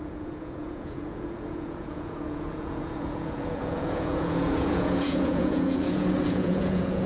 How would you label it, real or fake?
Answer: fake